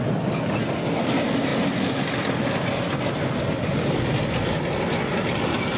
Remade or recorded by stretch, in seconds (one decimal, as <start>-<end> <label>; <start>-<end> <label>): 0.0-5.8 recorded

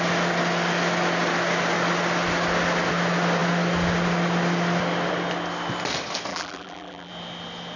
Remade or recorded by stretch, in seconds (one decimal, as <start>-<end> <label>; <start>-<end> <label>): 0.0-6.3 recorded; 6.3-7.1 remade; 7.1-7.8 recorded

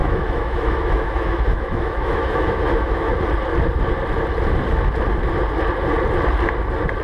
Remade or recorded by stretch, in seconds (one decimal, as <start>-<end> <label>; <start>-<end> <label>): 0.0-3.2 remade; 3.2-7.0 recorded